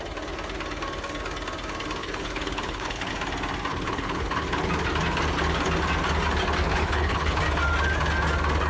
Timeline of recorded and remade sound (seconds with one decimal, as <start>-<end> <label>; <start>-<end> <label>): 0.0-2.0 recorded; 2.0-3.1 remade; 3.1-3.7 recorded; 3.7-4.7 remade; 4.7-6.7 recorded; 6.7-7.4 remade; 7.4-8.7 recorded